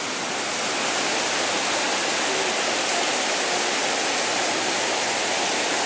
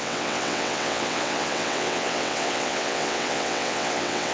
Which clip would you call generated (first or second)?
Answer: second